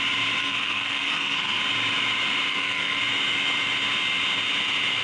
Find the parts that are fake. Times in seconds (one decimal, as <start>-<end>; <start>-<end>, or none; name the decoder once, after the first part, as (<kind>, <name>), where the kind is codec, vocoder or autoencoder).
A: 0.4-1.6 (codec, SNAC); 2.5-3.0